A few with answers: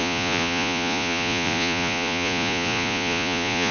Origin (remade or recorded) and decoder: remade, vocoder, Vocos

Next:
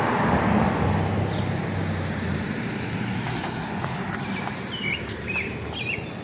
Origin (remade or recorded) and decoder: recorded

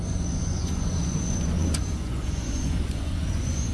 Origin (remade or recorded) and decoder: remade, vocoder, Vocos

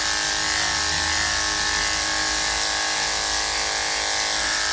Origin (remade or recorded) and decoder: recorded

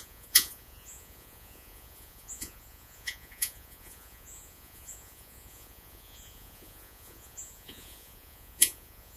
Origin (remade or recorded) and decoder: remade, vocoder, Vocos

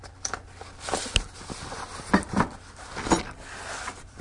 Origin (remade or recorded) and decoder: recorded